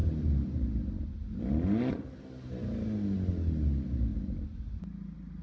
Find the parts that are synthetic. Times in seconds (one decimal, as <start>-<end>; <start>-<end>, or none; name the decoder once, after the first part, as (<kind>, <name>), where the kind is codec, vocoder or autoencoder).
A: 0.0-1.4 (vocoder, BigVGAN v2); 4.1-4.8